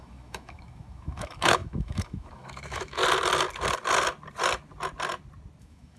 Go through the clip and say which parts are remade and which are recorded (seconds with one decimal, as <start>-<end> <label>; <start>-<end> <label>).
0.0-3.0 remade; 3.0-5.6 recorded; 5.6-6.0 remade